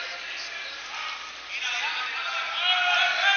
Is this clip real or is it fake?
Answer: real